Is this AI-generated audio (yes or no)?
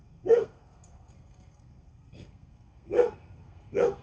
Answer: yes